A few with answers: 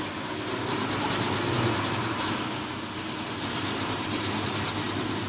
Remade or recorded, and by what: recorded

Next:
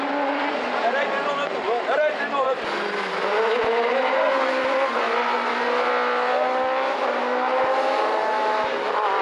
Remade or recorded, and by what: recorded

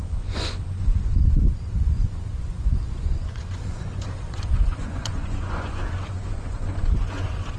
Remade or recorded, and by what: remade, vocoder, Vocos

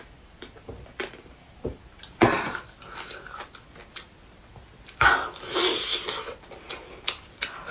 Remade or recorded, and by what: recorded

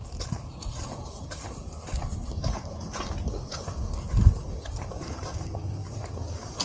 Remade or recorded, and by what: recorded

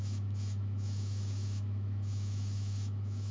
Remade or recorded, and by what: remade, autoencoder, DAC-VAE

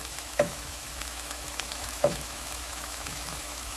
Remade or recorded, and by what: remade, autoencoder, DAC-VAE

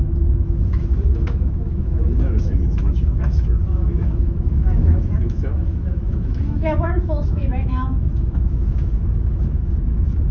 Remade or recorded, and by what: remade, autoencoder, DAC-VAE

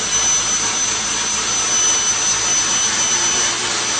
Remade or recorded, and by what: recorded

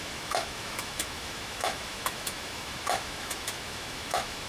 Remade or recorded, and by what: remade, autoencoder, DAC-VAE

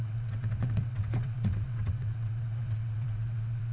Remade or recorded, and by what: remade, vocoder, WaveNeXt